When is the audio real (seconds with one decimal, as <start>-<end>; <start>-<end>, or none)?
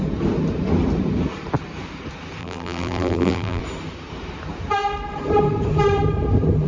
0.0-2.4; 3.6-6.7